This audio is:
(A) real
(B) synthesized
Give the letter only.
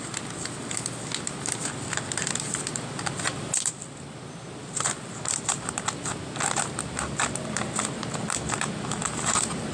A